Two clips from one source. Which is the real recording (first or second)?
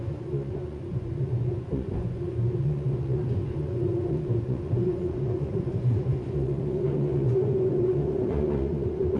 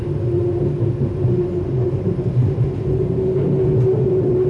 second